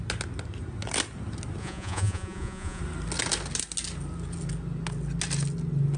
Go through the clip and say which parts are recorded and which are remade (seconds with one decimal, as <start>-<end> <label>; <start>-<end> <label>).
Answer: 0.0-1.6 recorded; 1.6-2.8 remade; 2.8-6.0 recorded